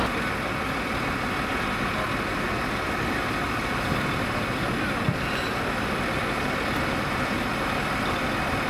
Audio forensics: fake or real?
real